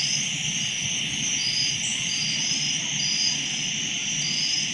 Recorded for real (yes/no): yes